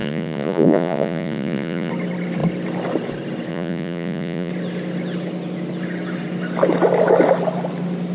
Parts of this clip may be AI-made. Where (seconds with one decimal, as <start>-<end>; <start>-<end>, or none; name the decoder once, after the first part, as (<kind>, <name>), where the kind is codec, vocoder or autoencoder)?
0.0-1.9 (vocoder, Vocos); 3.5-4.5